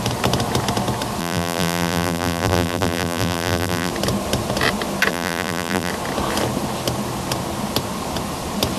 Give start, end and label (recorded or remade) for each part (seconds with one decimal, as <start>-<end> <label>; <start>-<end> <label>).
0.0-1.2 recorded; 1.2-3.9 remade; 3.9-5.1 recorded; 5.1-5.9 remade; 5.9-8.8 recorded